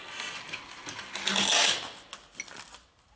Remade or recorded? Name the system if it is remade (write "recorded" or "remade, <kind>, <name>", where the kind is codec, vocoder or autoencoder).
recorded